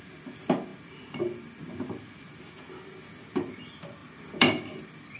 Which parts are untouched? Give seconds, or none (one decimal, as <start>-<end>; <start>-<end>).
0.0-4.0; 4.7-5.2